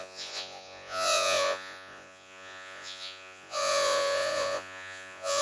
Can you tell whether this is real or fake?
fake